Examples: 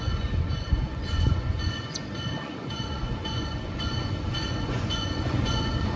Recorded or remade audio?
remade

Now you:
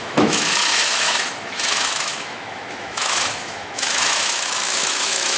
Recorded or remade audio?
remade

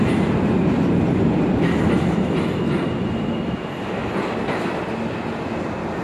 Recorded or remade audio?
recorded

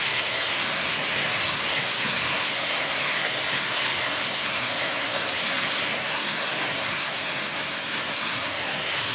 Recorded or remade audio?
remade